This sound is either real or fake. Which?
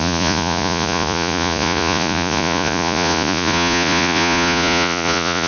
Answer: fake